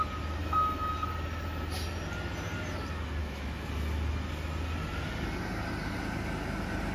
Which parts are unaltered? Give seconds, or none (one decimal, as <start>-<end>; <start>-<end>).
0.0-0.4; 0.9-3.2; 3.7-6.9